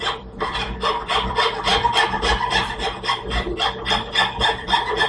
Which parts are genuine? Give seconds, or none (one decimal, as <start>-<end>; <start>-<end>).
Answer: none